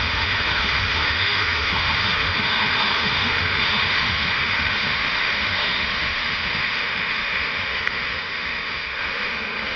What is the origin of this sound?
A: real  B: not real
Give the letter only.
B